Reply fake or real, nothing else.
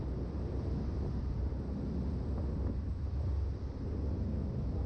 real